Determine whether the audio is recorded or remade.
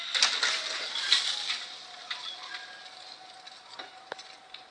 recorded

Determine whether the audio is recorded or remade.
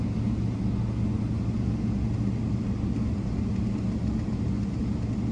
recorded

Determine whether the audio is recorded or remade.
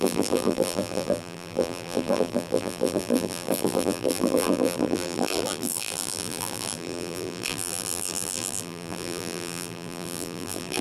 remade